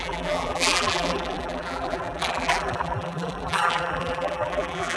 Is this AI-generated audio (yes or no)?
yes